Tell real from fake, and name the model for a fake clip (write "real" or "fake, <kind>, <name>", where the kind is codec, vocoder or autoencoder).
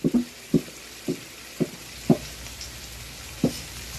real